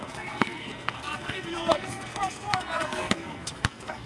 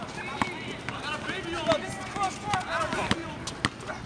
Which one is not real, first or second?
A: first